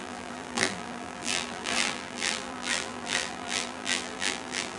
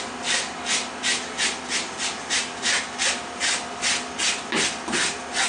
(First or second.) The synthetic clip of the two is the first